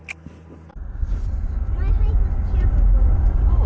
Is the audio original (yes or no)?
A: yes